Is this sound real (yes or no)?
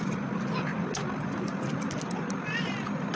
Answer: yes